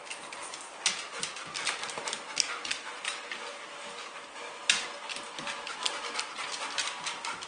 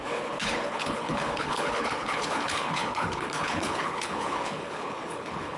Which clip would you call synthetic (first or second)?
second